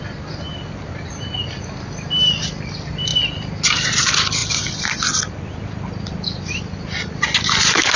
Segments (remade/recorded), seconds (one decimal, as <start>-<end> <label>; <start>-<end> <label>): 0.0-8.0 recorded